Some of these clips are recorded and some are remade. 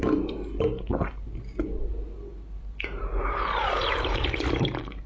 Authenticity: recorded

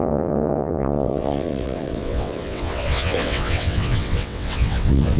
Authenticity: remade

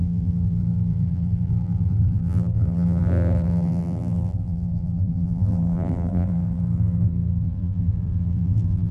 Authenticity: remade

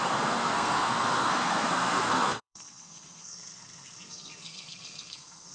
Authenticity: remade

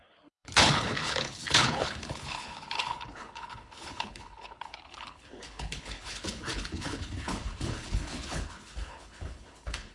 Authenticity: remade